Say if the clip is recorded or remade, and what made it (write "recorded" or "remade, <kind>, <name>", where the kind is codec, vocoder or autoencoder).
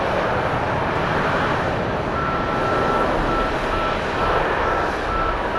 recorded